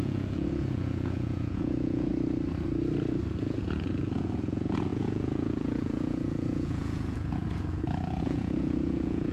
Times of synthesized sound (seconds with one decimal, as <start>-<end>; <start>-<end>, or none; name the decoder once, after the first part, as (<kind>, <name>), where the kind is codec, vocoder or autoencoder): 0.0-2.1 (vocoder, Vocos); 3.4-9.3